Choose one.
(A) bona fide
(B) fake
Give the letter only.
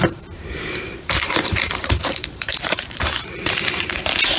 B